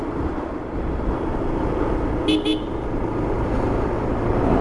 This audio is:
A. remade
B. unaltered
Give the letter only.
B